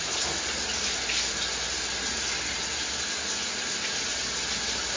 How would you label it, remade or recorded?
recorded